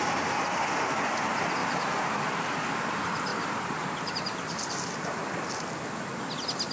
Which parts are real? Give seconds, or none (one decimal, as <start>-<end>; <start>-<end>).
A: 0.0-1.6; 2.6-3.3; 5.2-6.7